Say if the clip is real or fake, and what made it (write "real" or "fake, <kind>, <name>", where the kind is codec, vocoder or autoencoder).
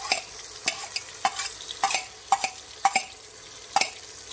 real